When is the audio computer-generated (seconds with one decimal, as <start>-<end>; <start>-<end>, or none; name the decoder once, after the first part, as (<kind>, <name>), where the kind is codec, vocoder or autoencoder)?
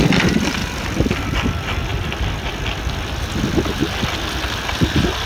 0.0-3.8 (vocoder, BigVGAN v2); 4.7-5.3